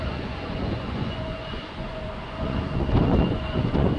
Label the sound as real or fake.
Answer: fake